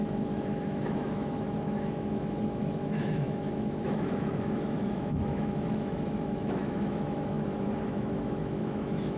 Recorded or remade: remade